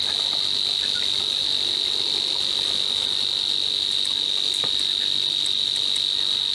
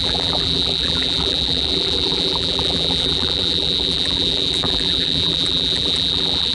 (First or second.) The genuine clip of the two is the first